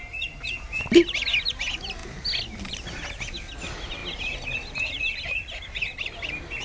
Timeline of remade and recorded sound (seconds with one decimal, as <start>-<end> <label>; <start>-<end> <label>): 0.0-6.6 recorded